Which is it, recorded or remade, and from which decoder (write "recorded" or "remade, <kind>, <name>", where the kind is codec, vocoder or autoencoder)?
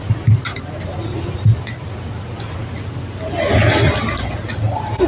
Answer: recorded